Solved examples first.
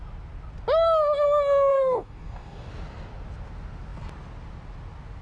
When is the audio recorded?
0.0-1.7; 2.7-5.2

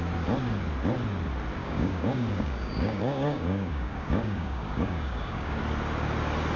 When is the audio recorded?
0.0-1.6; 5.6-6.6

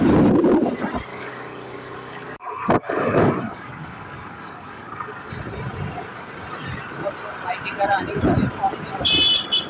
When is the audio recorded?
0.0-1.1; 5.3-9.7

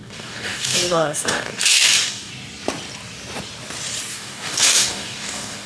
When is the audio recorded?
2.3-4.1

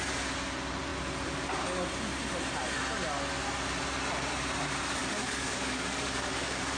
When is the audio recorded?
0.0-5.0